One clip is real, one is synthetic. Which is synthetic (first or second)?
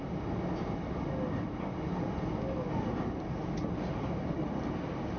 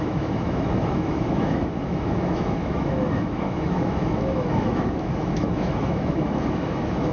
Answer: second